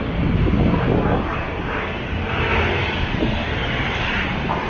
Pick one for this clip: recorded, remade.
recorded